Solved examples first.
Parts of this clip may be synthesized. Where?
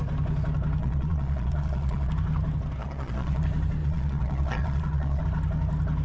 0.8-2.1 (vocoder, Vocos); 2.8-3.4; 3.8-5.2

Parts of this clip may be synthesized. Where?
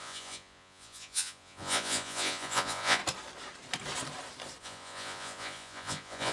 0.0-3.0 (vocoder, Vocos); 4.6-6.3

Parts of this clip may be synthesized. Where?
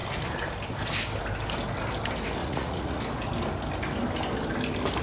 2.4-3.0 (vocoder, Vocos)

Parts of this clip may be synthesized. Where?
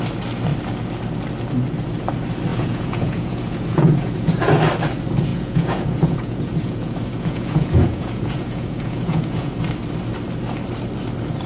2.5-4.4 (vocoder, Vocos); 5.3-9.5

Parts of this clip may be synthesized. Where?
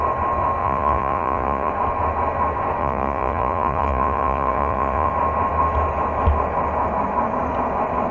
0.6-1.7 (vocoder, Vocos); 2.8-5.1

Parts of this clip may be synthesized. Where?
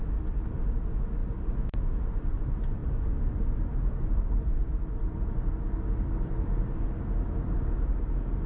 none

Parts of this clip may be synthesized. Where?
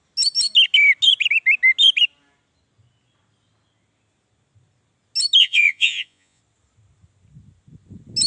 5.4-6.4 (vocoder, Vocos)